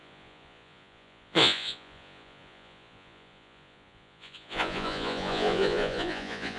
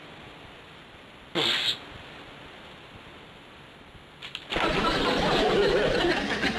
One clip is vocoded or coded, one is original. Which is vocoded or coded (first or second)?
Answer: first